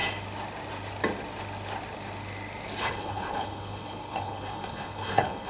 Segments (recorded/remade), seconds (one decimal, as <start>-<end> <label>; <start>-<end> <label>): 0.0-2.8 recorded; 2.8-5.5 remade